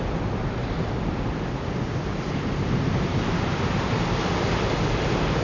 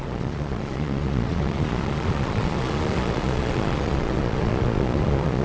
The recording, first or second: first